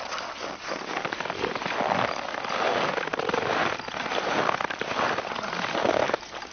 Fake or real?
real